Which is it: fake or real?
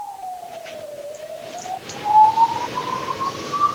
fake